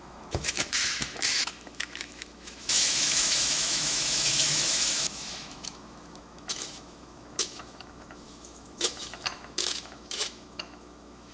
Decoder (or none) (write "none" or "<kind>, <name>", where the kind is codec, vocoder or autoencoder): autoencoder, DAC-VAE